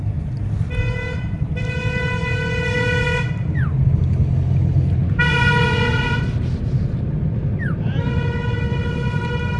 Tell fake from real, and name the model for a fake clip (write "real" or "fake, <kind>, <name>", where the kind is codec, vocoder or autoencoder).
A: real